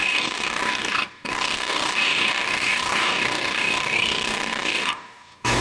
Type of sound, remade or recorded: remade